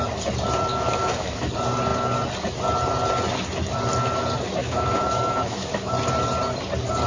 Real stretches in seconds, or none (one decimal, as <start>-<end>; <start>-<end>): 0.0-0.7; 1.5-4.6; 5.9-7.1